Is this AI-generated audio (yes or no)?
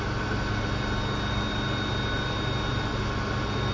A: no